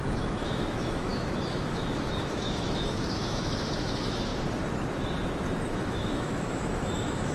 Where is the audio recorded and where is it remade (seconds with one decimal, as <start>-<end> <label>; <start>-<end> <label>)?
0.0-4.3 remade; 4.3-5.7 recorded; 5.7-7.3 remade